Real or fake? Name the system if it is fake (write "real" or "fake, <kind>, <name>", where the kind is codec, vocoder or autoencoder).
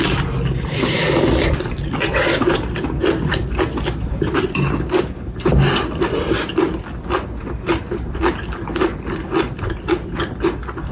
fake, vocoder, BigVGAN v2